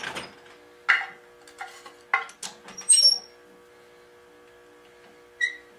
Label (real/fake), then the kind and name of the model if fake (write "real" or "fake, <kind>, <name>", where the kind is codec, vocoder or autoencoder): real